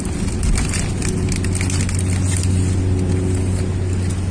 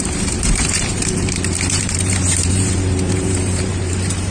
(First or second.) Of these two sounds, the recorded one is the first